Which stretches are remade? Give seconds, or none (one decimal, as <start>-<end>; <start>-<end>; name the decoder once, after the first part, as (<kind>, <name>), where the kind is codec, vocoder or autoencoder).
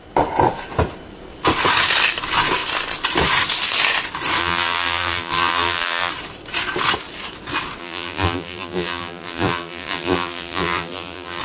4.4-6.1 (vocoder, BigVGAN v2); 7.8-11.4